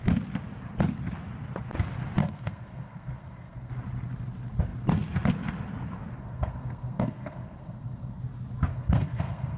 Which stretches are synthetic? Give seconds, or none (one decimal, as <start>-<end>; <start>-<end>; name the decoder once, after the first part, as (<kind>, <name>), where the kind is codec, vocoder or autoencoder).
2.2-3.7 (codec, SNAC); 6.2-8.2; 8.7-9.6